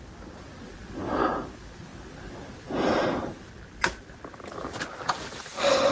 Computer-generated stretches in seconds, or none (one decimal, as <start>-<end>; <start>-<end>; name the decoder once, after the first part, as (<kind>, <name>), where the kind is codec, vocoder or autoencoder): none